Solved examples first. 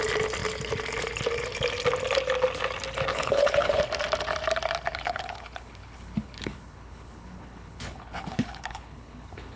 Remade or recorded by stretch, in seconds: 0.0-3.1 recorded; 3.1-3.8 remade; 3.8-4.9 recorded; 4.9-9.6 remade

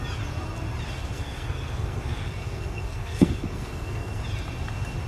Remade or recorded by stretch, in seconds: 0.0-1.1 recorded; 1.1-4.2 remade; 4.2-5.1 recorded

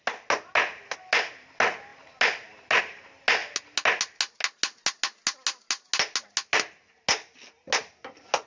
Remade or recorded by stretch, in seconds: 0.0-8.5 recorded

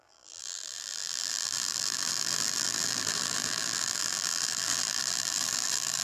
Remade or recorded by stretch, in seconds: 0.0-6.0 remade

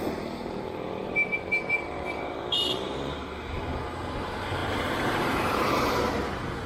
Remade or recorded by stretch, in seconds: 0.0-1.0 recorded; 1.0-3.4 remade; 3.4-4.6 recorded; 4.6-6.1 remade; 6.1-6.7 recorded

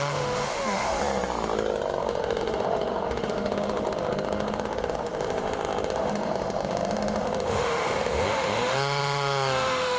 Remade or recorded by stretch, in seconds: 0.0-1.0 remade; 1.0-2.0 recorded; 2.0-10.0 remade

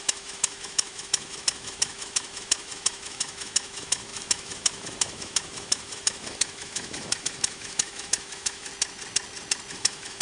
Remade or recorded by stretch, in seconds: 0.0-8.7 remade; 8.7-9.7 recorded; 9.7-10.2 remade

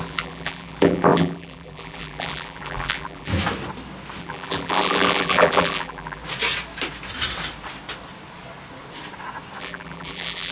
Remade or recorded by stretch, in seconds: 0.0-3.3 remade; 3.3-4.2 recorded; 4.2-6.2 remade; 6.2-9.6 recorded; 9.6-10.5 remade